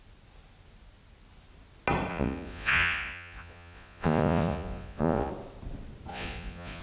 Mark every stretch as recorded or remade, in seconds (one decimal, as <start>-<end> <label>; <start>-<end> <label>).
0.0-2.1 recorded; 2.1-5.3 remade; 5.3-6.1 recorded; 6.1-6.8 remade